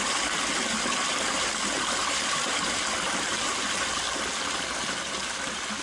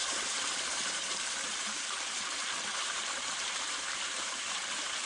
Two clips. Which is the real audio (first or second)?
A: first